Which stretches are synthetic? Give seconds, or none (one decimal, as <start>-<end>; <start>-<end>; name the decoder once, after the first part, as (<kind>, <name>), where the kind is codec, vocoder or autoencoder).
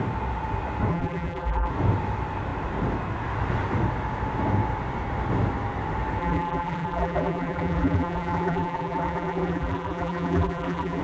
0.9-1.7 (vocoder, BigVGAN v2); 6.2-11.0